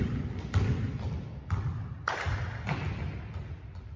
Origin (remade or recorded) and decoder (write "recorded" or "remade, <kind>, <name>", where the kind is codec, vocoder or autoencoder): recorded